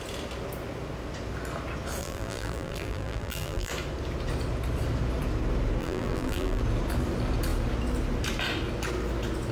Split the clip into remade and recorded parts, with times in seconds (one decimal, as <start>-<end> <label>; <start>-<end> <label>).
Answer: 0.0-2.0 recorded; 2.0-3.7 remade; 3.7-5.8 recorded; 5.8-6.6 remade; 6.6-9.5 recorded